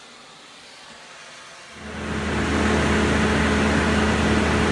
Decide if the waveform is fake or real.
real